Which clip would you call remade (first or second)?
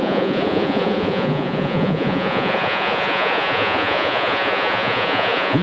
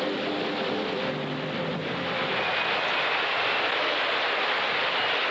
first